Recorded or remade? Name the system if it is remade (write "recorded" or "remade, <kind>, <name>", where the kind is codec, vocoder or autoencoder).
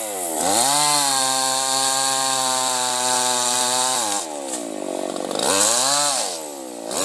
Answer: recorded